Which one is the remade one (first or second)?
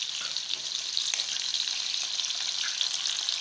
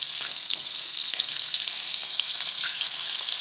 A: second